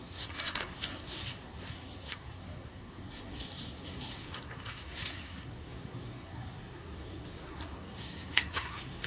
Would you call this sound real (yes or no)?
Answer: no